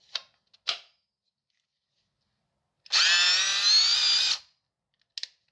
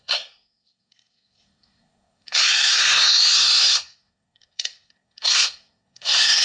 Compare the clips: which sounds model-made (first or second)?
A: second